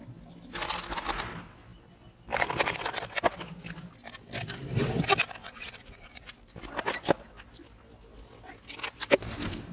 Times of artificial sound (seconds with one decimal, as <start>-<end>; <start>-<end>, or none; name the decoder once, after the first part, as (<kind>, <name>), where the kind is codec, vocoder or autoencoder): 5.4-6.3 (vocoder, Vocos)